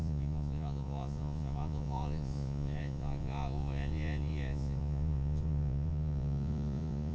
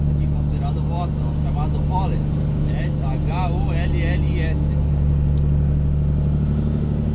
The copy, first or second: first